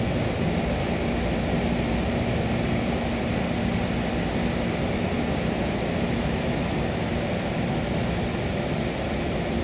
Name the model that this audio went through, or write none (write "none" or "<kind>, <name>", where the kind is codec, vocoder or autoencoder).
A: none